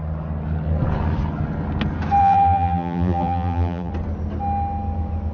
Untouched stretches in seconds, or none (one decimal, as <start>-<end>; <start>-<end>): 0.0-2.2; 3.9-5.3